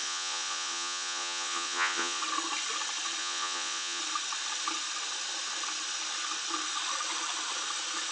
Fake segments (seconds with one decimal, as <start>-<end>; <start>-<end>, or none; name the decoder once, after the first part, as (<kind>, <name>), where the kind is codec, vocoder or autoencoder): 0.0-2.2 (vocoder, Vocos); 3.2-4.0